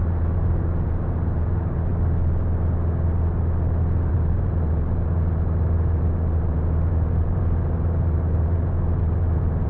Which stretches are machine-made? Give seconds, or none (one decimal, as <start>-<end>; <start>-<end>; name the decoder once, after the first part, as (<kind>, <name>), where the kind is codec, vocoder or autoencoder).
0.0-1.9 (vocoder, BigVGAN v2); 4.1-9.7